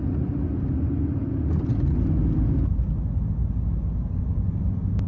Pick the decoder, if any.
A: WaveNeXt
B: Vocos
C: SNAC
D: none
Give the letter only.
D